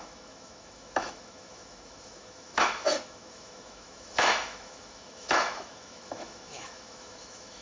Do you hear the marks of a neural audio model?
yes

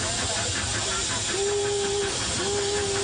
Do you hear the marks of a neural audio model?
no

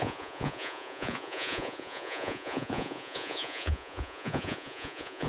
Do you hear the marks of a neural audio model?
yes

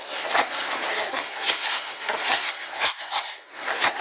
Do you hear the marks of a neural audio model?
yes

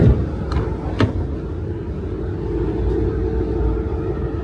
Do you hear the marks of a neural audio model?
no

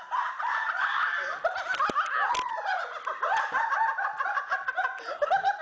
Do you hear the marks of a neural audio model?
no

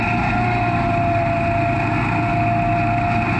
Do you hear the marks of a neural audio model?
no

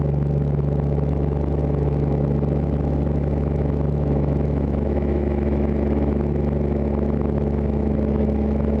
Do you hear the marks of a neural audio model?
yes